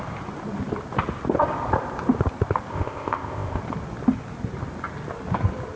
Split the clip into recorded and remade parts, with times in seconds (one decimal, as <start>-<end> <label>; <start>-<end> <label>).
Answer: 0.0-2.7 recorded; 2.7-3.6 remade; 3.6-5.8 recorded